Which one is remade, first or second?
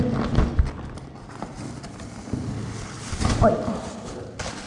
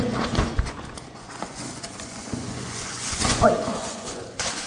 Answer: second